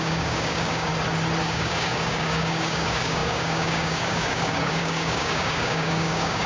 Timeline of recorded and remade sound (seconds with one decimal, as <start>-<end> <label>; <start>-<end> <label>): 0.0-0.9 remade; 0.9-1.4 recorded; 1.4-6.5 remade